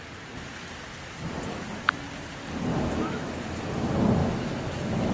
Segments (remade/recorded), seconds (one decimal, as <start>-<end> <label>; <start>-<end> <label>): 0.0-2.7 recorded; 2.7-3.6 remade; 3.6-4.2 recorded; 4.2-5.1 remade